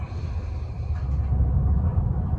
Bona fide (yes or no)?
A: yes